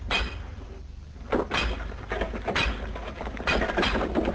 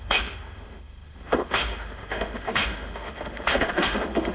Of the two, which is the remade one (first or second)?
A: second